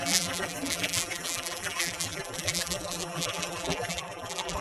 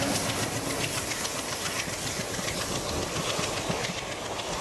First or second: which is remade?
first